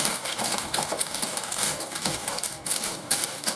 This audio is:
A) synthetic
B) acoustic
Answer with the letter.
A